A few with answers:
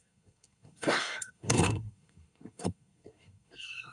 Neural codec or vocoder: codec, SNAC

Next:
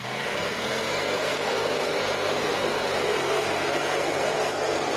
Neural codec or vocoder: codec, SNAC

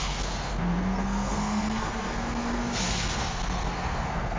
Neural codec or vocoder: codec, SNAC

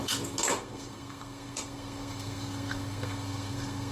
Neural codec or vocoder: codec, SNAC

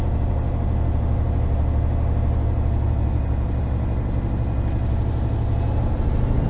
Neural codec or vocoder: none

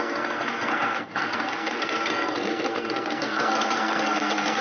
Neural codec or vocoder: codec, SNAC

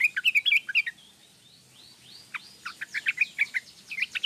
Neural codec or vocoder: none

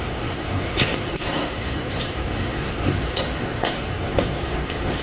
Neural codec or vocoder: codec, SNAC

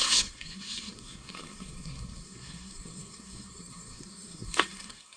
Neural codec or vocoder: codec, SNAC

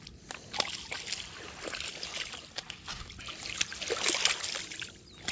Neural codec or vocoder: none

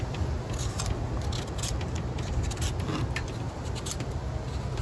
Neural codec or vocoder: none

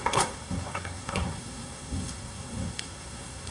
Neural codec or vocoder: codec, SNAC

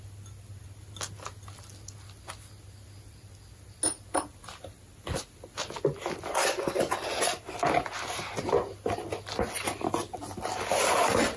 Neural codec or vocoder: none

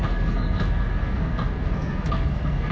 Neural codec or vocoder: codec, SNAC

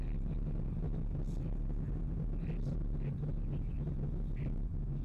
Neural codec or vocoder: none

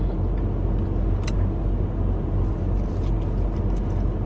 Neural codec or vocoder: none